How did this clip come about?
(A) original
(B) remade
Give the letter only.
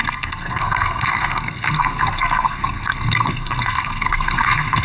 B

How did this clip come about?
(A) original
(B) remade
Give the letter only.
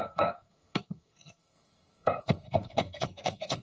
B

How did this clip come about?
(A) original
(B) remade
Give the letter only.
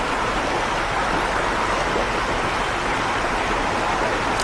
A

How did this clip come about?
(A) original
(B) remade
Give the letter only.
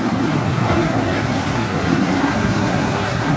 B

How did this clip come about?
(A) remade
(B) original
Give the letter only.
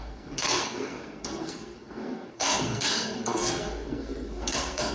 A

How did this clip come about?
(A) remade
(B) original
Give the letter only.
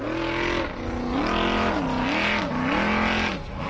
B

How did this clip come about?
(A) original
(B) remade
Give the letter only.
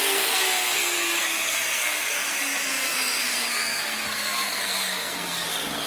B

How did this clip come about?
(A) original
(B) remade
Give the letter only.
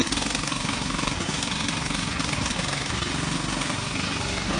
B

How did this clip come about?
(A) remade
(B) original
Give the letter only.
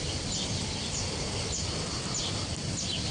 B